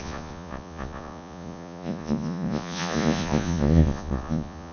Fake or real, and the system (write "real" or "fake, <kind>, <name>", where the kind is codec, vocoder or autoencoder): fake, vocoder, Vocos